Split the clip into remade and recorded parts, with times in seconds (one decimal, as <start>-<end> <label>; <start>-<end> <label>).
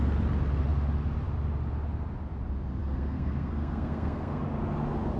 0.0-2.8 recorded; 2.8-4.4 remade; 4.4-5.2 recorded